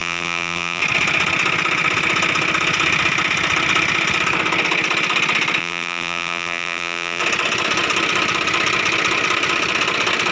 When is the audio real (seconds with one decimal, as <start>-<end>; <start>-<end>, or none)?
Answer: 0.8-5.6; 7.2-10.3